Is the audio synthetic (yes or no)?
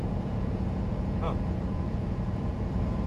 yes